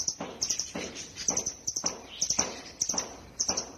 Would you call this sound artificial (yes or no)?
yes